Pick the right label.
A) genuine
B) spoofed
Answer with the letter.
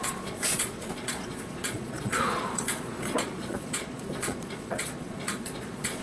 B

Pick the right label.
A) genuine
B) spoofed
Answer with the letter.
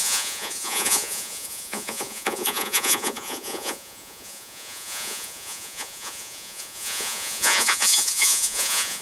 B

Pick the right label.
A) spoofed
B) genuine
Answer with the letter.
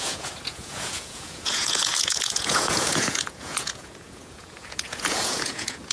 A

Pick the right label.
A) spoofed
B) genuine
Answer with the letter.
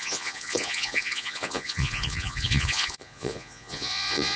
A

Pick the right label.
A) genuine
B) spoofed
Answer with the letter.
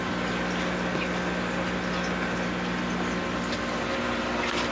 A